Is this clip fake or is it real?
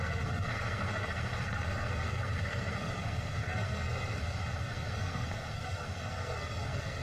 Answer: fake